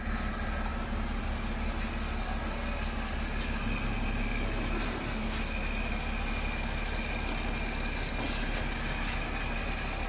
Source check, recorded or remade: recorded